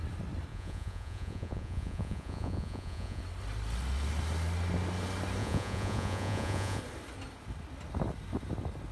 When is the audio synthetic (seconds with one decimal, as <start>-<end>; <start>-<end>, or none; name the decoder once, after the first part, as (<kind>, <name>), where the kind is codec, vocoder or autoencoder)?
0.5-3.2 (vocoder, Vocos); 5.4-6.8